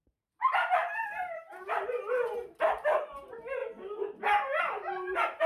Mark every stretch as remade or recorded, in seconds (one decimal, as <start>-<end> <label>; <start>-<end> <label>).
0.0-0.8 remade; 0.8-1.3 recorded; 1.3-5.5 remade